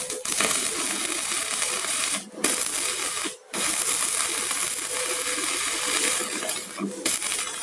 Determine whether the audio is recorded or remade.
recorded